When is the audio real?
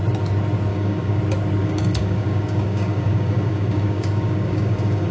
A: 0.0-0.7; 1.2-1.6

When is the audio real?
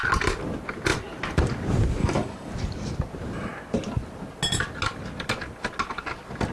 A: 0.0-2.0; 2.5-6.5